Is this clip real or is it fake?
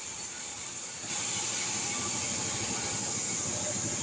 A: real